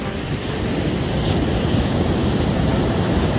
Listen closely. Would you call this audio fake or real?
real